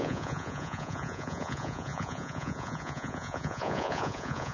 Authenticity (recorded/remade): remade